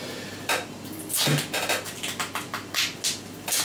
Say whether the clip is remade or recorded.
recorded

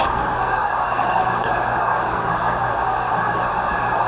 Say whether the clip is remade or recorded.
remade